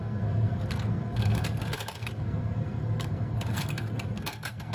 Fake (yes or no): yes